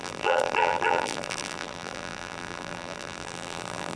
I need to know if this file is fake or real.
fake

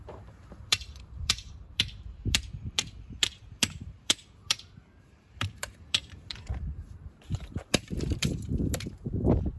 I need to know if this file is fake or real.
fake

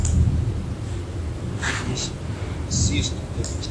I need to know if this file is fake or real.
real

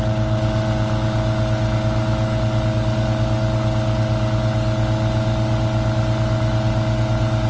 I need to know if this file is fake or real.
real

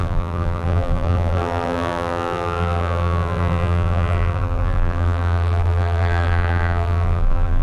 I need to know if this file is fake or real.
fake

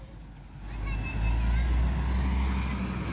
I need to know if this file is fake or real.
real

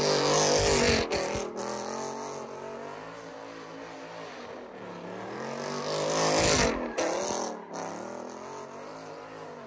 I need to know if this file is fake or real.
real